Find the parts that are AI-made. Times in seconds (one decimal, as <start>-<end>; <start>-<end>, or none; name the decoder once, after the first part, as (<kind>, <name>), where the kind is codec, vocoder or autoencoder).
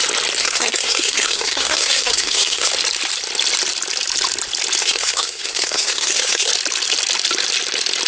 0.4-2.7 (codec, SNAC); 4.8-6.5